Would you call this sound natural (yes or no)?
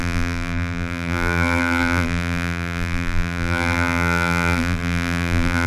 no